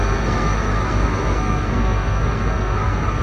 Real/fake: fake